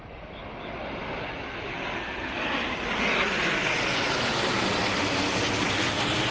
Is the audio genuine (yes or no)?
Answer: yes